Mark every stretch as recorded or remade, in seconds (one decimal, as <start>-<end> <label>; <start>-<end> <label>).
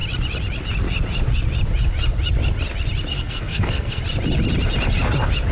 0.0-3.1 recorded; 3.1-4.0 remade; 4.0-5.5 recorded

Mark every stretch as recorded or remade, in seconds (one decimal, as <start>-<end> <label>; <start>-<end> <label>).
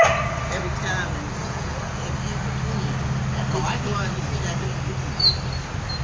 0.0-1.4 recorded; 1.4-1.9 remade; 1.9-6.0 recorded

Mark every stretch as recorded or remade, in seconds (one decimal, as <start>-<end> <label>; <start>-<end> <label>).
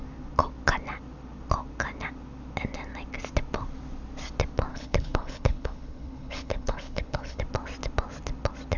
0.0-4.7 recorded; 4.7-7.4 remade; 7.4-8.8 recorded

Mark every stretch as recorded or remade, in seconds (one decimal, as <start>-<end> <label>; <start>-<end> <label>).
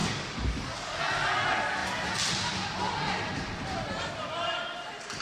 0.0-1.0 remade; 1.0-5.2 recorded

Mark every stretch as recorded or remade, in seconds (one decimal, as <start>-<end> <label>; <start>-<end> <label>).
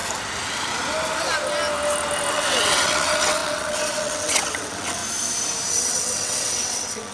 0.0-2.3 recorded; 2.3-5.0 remade; 5.0-5.7 recorded; 5.7-7.1 remade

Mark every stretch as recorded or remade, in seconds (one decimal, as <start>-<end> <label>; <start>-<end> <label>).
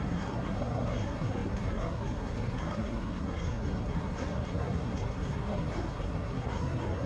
0.0-7.1 remade